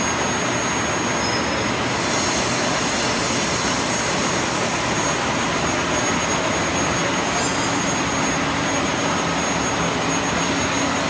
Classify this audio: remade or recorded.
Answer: recorded